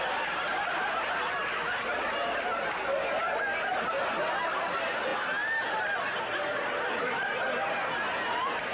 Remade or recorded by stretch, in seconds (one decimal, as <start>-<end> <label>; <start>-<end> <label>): 0.0-8.7 recorded